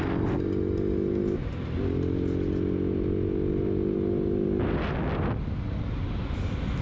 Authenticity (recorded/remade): recorded